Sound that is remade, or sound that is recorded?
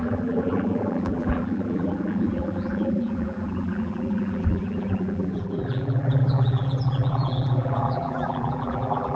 remade